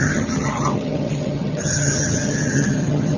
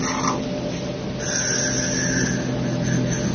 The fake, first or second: first